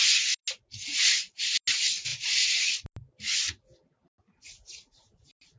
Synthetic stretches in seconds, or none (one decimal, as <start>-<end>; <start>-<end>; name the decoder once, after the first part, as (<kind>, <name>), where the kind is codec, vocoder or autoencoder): none